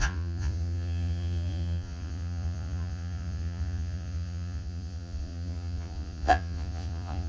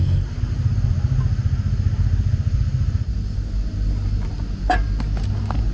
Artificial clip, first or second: first